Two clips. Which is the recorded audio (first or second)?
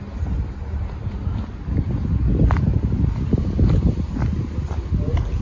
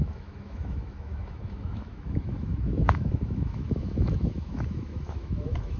first